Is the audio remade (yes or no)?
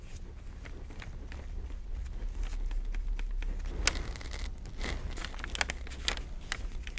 no